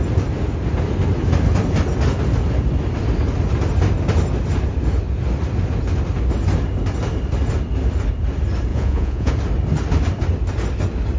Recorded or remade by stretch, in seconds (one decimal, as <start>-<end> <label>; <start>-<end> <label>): 0.0-8.7 recorded; 8.7-9.3 remade; 9.3-11.2 recorded